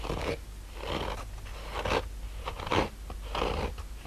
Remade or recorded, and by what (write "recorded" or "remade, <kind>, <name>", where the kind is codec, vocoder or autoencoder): recorded